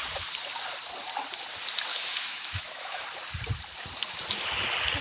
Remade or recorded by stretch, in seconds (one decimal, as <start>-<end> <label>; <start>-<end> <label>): 0.0-1.9 recorded; 1.9-3.0 remade; 3.0-5.0 recorded